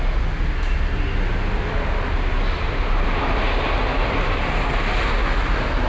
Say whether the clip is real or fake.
real